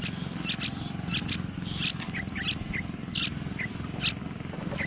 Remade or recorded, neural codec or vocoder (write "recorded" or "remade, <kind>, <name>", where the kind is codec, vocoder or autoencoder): recorded